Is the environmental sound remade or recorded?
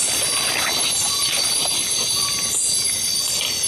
recorded